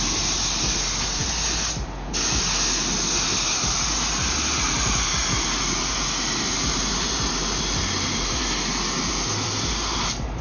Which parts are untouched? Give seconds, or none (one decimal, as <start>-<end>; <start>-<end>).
0.0-10.4